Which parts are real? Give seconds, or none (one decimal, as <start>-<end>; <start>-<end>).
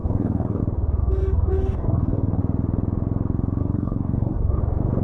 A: 0.6-1.0; 2.4-3.6; 4.6-5.0